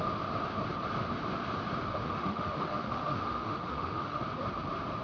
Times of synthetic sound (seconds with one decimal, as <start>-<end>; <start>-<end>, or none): 1.9-4.2